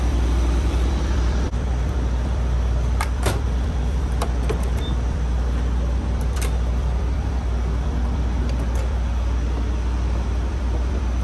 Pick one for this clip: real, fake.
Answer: fake